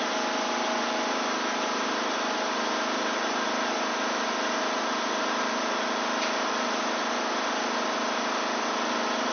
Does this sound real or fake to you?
real